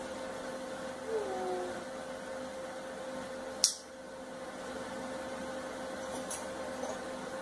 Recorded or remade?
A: recorded